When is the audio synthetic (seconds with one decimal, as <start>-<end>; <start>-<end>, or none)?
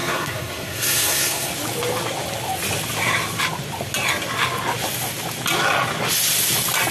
0.0-1.5